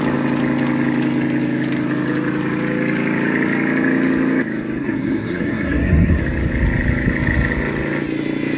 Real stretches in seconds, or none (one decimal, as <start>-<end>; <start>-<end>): 0.0-4.8; 6.2-8.6